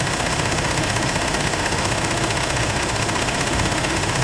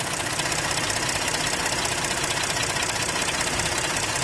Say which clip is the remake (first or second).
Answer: first